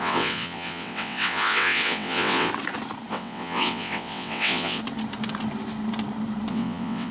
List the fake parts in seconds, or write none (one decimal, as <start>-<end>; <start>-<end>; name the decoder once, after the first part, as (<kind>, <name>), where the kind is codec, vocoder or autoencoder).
0.0-2.5 (vocoder, WaveNeXt); 3.1-4.8; 6.5-7.1